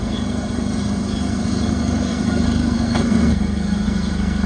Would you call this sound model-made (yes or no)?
yes